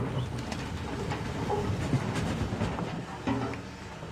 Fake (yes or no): no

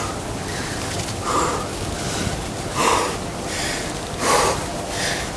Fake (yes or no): no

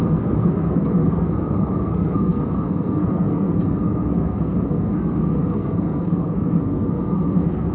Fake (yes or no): yes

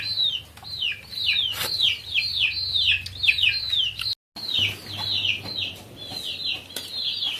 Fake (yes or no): no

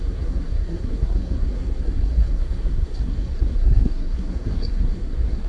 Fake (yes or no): yes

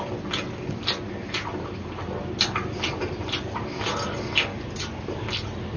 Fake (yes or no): no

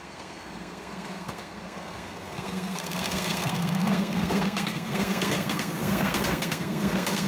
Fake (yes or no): yes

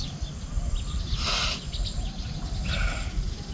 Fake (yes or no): no